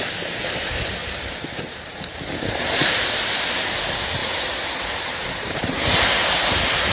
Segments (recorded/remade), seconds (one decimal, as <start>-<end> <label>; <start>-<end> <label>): 0.0-1.0 recorded; 1.0-3.1 remade; 3.1-4.2 recorded; 4.2-6.0 remade; 6.0-6.9 recorded